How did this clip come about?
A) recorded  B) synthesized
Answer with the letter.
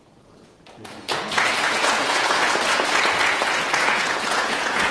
B